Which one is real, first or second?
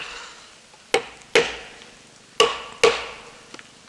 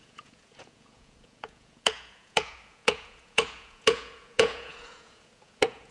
first